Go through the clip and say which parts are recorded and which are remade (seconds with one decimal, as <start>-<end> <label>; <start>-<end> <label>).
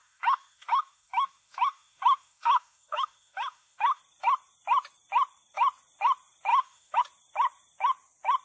0.0-4.0 remade; 4.0-6.5 recorded; 6.5-7.0 remade; 7.0-8.4 recorded